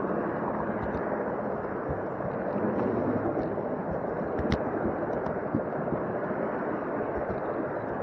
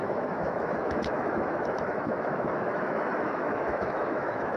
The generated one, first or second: second